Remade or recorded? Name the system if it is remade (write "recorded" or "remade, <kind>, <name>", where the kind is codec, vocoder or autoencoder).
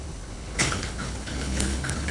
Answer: remade, codec, HILCodec